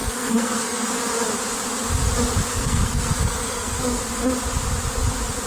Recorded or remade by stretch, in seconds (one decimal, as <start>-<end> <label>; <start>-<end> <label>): 0.0-0.9 remade; 0.9-2.5 recorded; 2.5-4.0 remade; 4.0-5.5 recorded

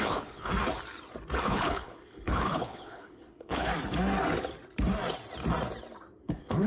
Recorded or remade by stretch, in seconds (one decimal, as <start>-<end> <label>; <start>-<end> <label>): 0.0-0.5 remade; 0.5-1.4 recorded; 1.4-3.7 remade; 3.7-6.3 recorded; 6.3-6.7 remade

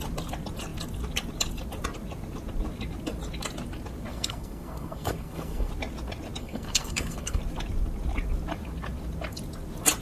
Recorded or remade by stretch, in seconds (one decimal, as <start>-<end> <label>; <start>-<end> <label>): 0.0-4.1 recorded; 4.1-5.7 remade; 5.7-6.4 recorded; 6.4-7.4 remade; 7.4-10.0 recorded